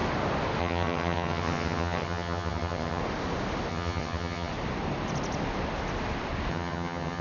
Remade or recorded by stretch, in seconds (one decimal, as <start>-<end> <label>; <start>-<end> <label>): 0.0-0.6 recorded; 0.6-3.0 remade; 3.0-3.7 recorded; 3.7-4.5 remade; 4.5-6.5 recorded; 6.5-7.2 remade